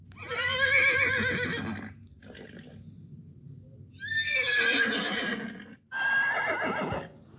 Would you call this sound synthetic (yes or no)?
no